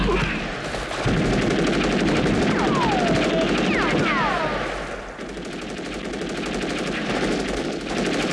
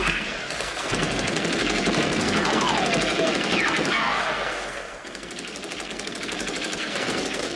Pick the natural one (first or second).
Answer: first